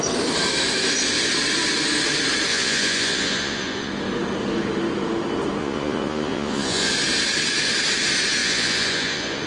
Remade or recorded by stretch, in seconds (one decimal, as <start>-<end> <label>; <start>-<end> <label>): 0.0-2.5 recorded; 2.5-3.9 remade; 3.9-5.6 recorded; 5.6-6.9 remade; 6.9-8.4 recorded; 8.4-9.5 remade